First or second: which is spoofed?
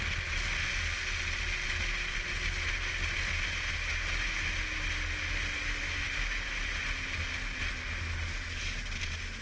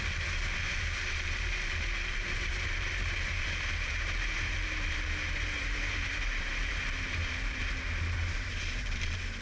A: second